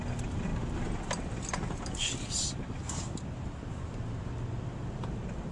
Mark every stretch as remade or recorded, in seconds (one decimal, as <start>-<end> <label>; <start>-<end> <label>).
0.0-5.5 recorded